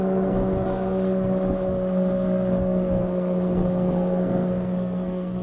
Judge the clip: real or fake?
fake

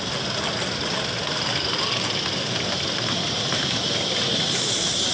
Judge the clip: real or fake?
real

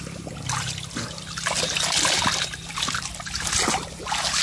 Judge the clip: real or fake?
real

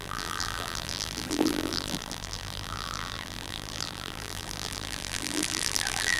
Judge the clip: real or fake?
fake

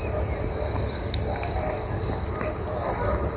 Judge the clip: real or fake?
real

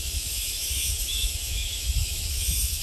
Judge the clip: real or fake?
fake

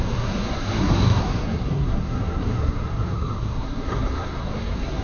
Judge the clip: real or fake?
fake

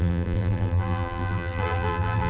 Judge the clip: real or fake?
fake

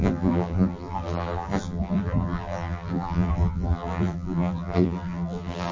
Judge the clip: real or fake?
fake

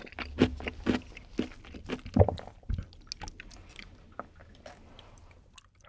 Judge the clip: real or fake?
real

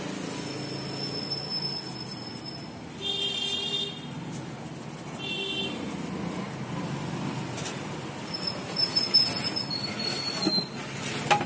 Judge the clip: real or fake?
real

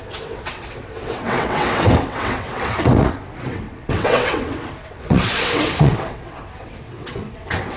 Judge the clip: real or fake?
fake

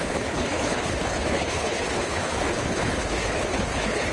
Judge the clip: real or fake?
fake